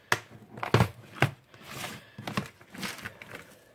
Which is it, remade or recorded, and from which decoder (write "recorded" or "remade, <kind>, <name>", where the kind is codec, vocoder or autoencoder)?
recorded